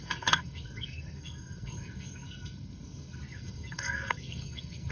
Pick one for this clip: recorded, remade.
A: remade